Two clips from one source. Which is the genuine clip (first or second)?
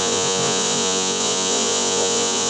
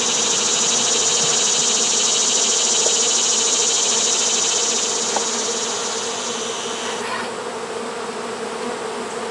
second